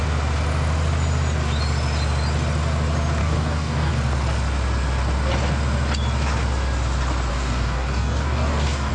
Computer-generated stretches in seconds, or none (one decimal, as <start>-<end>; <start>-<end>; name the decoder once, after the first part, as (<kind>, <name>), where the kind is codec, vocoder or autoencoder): 3.2-3.9 (codec, DAC); 7.3-8.9